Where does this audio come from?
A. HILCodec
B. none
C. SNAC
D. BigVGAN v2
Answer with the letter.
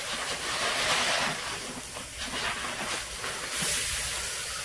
B